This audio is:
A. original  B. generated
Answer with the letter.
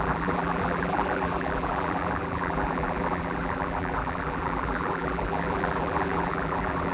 B